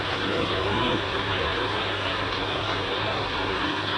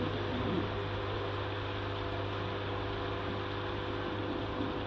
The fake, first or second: first